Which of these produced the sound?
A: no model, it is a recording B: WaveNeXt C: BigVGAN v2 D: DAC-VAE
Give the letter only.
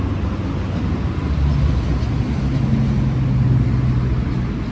A